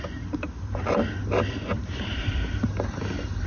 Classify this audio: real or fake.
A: real